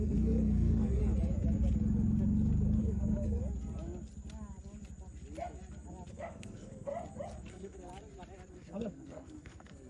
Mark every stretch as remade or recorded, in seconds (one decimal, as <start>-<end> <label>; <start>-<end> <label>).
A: 0.0-1.0 remade; 1.0-2.8 recorded; 2.8-3.4 remade; 3.4-6.1 recorded; 6.1-6.9 remade; 6.9-7.5 recorded; 7.5-7.9 remade; 7.9-8.5 recorded; 8.5-9.9 remade